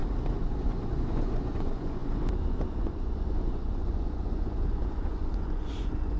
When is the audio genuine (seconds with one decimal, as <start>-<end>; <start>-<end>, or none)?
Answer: 0.0-0.6